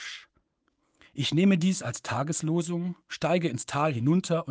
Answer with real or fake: fake